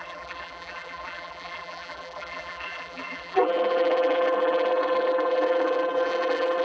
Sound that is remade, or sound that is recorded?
remade